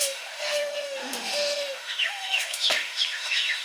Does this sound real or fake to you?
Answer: fake